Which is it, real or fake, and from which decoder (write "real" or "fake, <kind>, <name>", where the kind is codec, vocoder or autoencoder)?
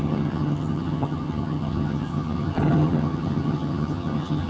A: fake, vocoder, HiFi-GAN